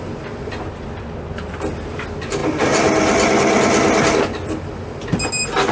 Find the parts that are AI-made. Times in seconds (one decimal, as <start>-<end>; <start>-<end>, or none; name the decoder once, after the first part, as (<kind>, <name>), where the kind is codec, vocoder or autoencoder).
none